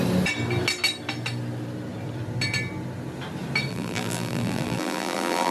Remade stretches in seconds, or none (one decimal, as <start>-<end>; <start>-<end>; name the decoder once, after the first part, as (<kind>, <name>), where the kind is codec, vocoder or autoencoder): 3.7-5.5 (vocoder, BigVGAN v2)